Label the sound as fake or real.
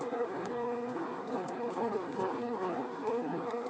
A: fake